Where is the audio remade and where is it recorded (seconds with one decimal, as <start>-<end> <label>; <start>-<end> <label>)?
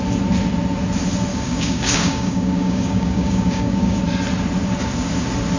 0.0-1.3 recorded; 1.3-4.0 remade; 4.0-5.6 recorded